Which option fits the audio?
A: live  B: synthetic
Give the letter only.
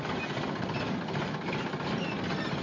A